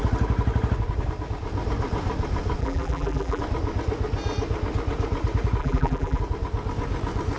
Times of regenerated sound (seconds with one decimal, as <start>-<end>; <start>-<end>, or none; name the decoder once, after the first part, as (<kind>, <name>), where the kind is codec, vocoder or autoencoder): 2.6-3.4 (vocoder, BigVGAN v2); 5.6-6.2